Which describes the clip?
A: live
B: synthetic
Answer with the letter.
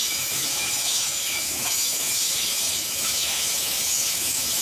B